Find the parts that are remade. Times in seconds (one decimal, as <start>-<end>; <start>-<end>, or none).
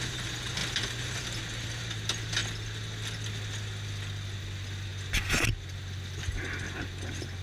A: none